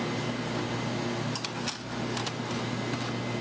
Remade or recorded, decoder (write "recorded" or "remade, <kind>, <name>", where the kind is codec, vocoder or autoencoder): recorded